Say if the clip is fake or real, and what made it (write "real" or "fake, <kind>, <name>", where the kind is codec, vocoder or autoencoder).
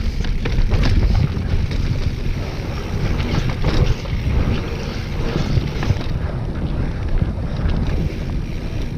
real